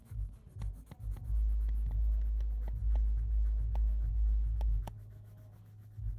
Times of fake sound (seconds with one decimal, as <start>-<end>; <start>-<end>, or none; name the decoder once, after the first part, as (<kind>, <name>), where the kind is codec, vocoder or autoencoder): 0.0-0.4 (autoencoder, DAC-VAE); 4.1-6.2